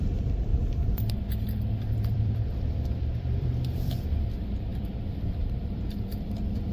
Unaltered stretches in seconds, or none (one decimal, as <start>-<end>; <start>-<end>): none

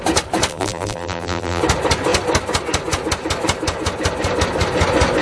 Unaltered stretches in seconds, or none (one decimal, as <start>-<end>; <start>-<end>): 0.0-0.5; 1.6-5.2

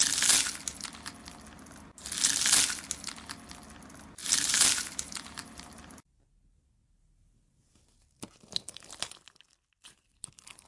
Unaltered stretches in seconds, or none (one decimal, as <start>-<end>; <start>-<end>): 0.0-4.2; 6.1-10.7

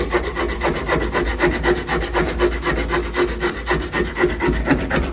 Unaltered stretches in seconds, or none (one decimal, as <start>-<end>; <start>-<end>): 1.3-4.0

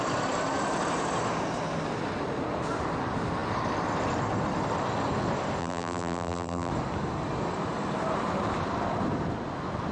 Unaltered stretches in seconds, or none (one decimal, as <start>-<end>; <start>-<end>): 0.0-5.6; 6.7-9.9